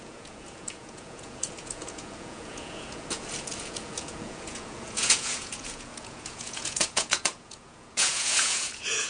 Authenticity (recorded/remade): remade